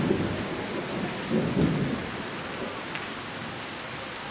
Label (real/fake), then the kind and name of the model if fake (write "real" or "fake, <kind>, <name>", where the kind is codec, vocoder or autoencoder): real